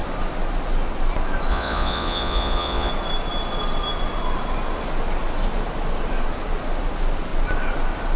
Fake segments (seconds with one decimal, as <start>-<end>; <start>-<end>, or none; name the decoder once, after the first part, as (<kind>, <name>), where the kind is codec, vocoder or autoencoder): 1.5-2.9 (vocoder, Vocos)